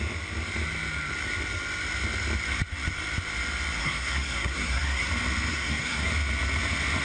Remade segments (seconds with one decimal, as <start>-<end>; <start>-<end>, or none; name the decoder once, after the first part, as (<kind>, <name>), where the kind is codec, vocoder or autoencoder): 3.8-5.1 (codec, SNAC); 5.5-6.1